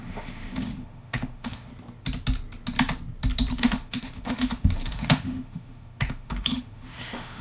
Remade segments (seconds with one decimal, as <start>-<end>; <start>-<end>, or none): 0.0-1.7; 3.5-7.4